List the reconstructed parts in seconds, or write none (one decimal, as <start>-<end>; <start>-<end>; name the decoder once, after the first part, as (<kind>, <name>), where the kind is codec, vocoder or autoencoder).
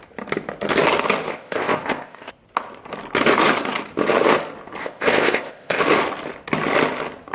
1.3-2.3 (codec, ZipCodec); 4.8-5.8